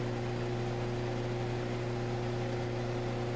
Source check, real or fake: real